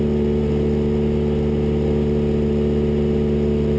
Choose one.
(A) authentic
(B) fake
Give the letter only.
A